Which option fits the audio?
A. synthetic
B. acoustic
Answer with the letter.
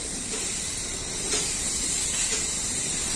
B